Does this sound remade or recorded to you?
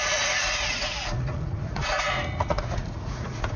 remade